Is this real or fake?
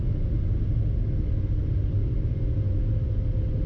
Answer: real